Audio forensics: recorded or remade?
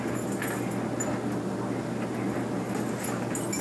recorded